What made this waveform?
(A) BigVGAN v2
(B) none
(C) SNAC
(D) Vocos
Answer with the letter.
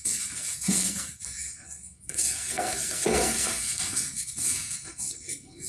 C